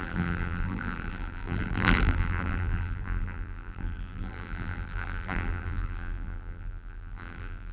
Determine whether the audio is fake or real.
fake